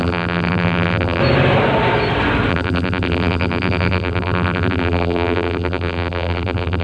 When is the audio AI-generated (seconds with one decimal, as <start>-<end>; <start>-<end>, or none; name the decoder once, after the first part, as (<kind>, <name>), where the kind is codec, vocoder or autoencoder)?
0.0-1.2 (vocoder, BigVGAN v2); 2.5-6.8

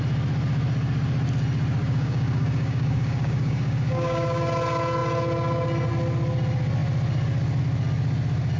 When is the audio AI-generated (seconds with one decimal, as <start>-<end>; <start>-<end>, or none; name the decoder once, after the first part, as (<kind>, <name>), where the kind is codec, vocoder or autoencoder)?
1.8-4.4 (codec, DAC)

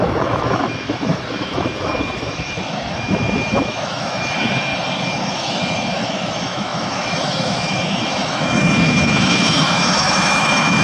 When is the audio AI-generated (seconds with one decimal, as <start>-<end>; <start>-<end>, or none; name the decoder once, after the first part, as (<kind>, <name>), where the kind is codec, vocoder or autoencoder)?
0.0-4.7 (autoencoder, DAC-VAE); 5.2-10.8

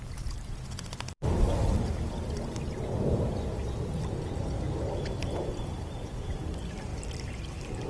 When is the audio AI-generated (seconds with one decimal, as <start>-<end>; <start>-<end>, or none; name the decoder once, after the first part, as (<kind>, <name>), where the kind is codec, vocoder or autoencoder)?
none

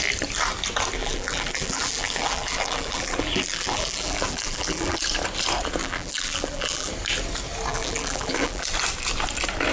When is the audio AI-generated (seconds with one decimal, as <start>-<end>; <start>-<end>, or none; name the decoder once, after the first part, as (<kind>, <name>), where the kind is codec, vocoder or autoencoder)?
1.0-5.0 (vocoder, BigVGAN v2); 5.8-6.9; 7.7-8.7

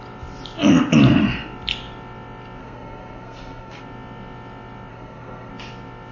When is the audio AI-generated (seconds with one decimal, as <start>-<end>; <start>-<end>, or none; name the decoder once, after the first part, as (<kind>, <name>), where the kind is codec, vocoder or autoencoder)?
2.6-3.8 (codec, SNAC); 4.9-5.5

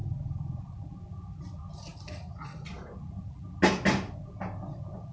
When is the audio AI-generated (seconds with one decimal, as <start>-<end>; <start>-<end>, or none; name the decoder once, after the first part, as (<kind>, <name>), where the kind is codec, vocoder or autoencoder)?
none

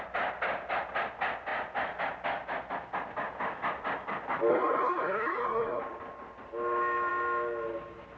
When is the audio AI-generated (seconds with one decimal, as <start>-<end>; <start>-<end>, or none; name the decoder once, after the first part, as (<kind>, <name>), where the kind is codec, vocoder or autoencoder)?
4.5-5.8 (codec, SNAC)